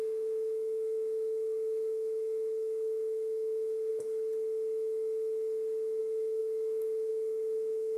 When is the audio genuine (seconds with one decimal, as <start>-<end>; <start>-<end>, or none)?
3.9-6.0